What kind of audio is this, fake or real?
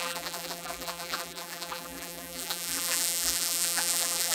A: fake